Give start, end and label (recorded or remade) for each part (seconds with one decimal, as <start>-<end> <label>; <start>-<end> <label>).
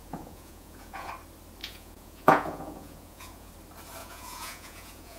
0.0-1.1 remade; 1.1-1.6 recorded; 1.6-3.5 remade; 3.5-4.0 recorded; 4.0-5.2 remade